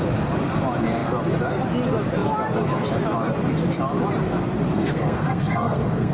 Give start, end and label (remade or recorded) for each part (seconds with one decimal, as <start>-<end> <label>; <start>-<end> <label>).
0.0-4.7 recorded; 4.7-6.1 remade